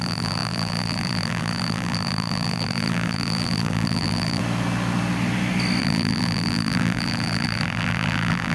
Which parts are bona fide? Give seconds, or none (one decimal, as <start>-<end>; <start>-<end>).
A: 4.4-5.8